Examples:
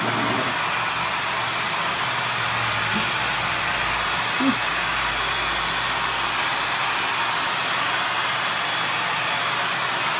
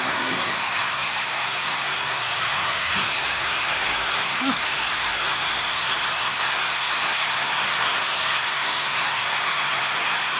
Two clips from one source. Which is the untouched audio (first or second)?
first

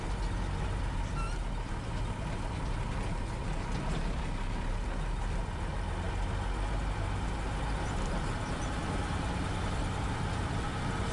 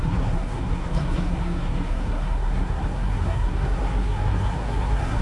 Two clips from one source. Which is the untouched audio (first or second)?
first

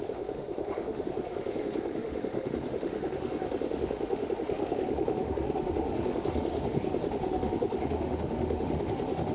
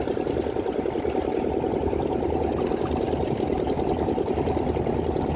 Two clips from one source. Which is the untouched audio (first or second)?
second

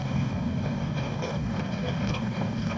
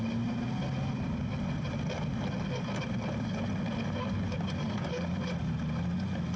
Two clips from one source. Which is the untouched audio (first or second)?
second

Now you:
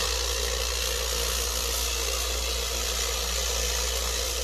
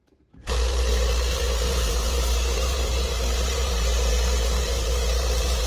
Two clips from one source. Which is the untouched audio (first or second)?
first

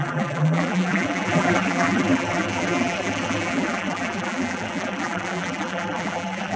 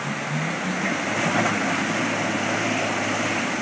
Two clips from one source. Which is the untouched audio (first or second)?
second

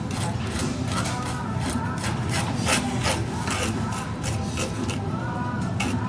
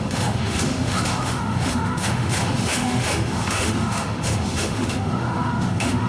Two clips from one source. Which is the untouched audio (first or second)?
first